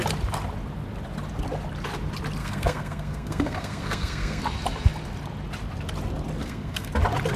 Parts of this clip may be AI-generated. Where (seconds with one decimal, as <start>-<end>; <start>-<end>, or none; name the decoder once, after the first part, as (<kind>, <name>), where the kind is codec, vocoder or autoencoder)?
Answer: 2.4-4.4 (codec, SNAC); 6.4-6.9